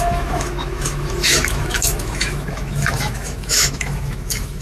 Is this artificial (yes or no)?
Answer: yes